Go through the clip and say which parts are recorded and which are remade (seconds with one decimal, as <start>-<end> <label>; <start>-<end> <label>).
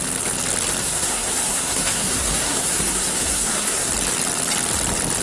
0.0-0.8 recorded; 0.8-3.9 remade; 3.9-5.2 recorded